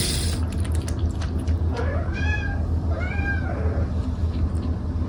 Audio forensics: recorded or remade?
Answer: recorded